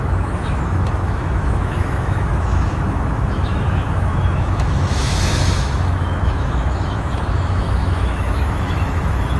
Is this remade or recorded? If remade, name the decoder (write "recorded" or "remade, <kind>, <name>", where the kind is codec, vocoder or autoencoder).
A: remade, autoencoder, DAC-VAE